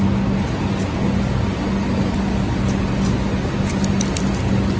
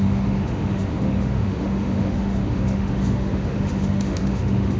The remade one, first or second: second